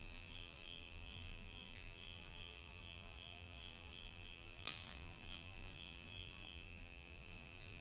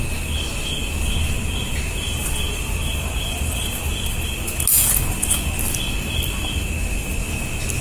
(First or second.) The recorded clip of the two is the second